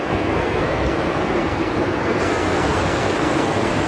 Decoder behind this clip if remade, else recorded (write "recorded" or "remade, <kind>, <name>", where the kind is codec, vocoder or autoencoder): remade, codec, SNAC